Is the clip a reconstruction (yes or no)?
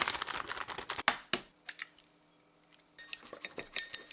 no